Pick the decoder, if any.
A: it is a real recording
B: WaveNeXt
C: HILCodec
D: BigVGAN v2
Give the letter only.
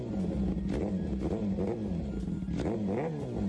A